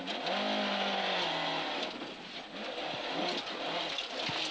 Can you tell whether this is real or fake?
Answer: real